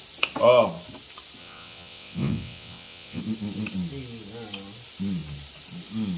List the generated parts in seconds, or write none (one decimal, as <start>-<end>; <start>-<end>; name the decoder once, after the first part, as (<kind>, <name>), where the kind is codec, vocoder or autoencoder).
1.4-3.2 (vocoder, WaveNeXt)